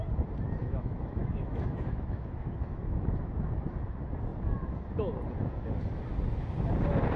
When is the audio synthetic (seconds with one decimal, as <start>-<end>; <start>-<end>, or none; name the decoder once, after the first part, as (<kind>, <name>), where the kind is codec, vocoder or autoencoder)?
0.6-3.3 (autoencoder, DAC-VAE)

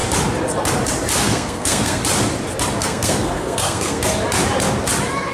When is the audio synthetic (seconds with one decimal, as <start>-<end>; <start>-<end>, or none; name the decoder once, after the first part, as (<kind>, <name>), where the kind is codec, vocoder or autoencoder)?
1.2-2.0 (codec, SNAC); 2.8-4.0